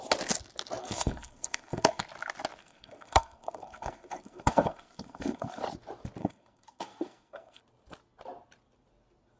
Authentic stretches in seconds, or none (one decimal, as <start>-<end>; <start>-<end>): 0.0-0.8; 2.0-2.6; 5.6-6.2; 7.6-9.4